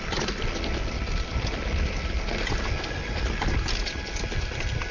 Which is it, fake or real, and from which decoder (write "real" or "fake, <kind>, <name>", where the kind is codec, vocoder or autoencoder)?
real